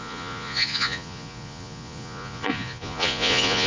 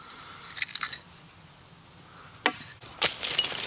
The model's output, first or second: first